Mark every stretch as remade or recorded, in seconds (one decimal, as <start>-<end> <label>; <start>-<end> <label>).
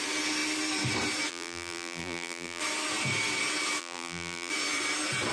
0.0-1.3 recorded; 1.3-2.6 remade; 2.6-3.8 recorded; 3.8-4.5 remade; 4.5-5.3 recorded